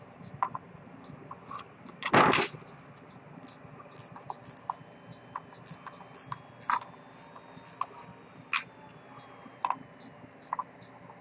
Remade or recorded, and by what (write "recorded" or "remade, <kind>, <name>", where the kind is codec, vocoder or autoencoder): recorded